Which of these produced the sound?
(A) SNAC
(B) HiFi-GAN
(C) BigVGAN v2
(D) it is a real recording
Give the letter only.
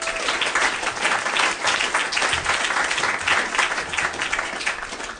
D